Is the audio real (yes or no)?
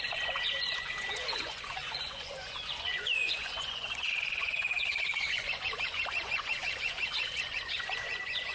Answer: no